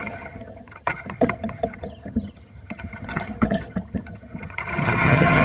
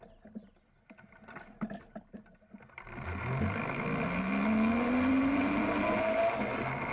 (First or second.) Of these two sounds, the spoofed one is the first